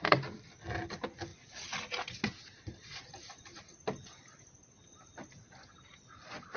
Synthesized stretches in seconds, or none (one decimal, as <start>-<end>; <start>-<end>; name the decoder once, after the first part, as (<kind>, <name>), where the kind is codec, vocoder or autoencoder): none